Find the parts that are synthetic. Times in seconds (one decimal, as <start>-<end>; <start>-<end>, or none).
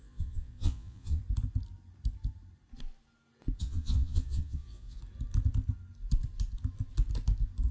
0.0-1.2; 3.6-5.0